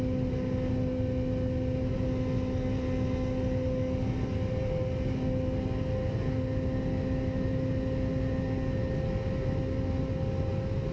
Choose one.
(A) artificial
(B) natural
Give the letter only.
B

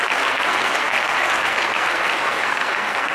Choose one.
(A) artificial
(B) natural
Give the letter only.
A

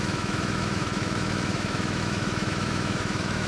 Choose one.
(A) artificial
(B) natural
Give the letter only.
A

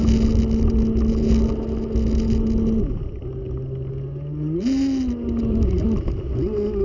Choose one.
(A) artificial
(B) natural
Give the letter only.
B